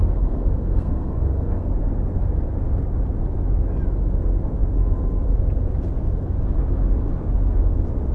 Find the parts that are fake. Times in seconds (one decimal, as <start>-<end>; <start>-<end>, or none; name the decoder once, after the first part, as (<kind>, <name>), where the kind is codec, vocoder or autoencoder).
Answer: 0.0-1.7 (codec, SNAC)